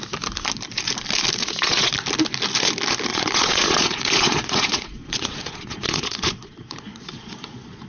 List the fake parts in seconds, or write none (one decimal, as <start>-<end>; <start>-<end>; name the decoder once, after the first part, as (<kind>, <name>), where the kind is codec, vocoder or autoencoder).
1.4-1.9 (vocoder, Vocos); 3.1-7.9